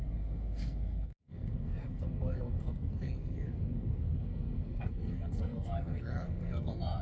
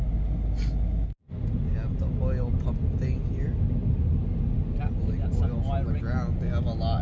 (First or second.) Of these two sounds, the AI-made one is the first